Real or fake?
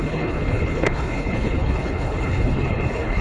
fake